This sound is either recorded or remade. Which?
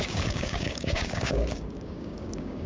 remade